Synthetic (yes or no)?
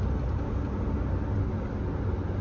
no